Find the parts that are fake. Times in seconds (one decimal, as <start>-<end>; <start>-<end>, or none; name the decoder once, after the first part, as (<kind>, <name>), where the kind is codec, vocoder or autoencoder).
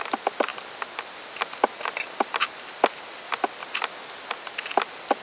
none